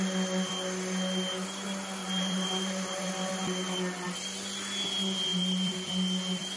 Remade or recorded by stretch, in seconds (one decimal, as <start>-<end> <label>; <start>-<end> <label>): 0.0-2.0 recorded; 2.0-3.3 remade; 3.3-5.3 recorded; 5.3-5.9 remade; 5.9-6.6 recorded